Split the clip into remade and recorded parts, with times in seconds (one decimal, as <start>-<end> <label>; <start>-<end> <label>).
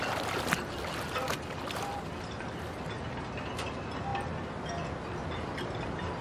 0.0-6.2 recorded